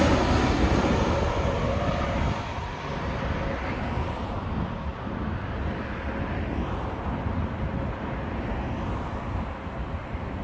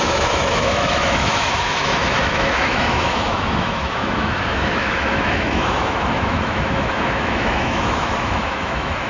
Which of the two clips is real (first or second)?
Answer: first